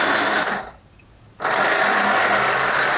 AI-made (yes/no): no